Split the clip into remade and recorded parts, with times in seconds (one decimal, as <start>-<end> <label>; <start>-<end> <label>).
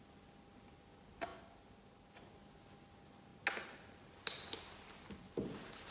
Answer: 0.0-5.9 recorded